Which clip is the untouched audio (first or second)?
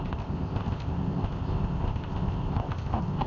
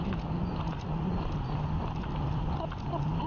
second